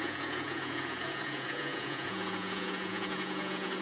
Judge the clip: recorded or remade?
remade